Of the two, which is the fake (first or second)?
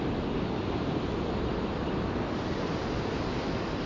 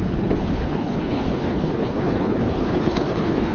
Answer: second